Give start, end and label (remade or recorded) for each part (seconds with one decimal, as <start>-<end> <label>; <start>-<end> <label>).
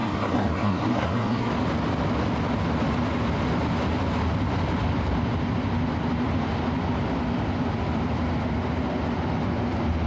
0.0-1.5 remade; 1.5-10.1 recorded